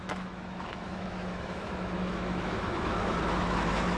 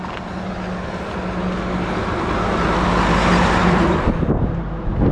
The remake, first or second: first